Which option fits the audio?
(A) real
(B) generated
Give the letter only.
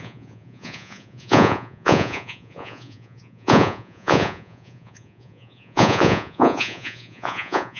B